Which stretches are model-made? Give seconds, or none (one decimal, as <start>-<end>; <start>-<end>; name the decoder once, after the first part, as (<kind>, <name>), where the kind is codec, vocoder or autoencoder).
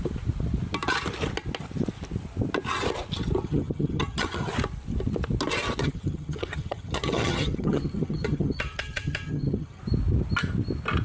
3.4-4.5 (vocoder, HiFi-GAN); 5.8-9.8